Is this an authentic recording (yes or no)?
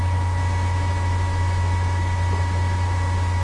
no